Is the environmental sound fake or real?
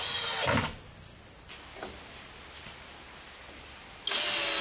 real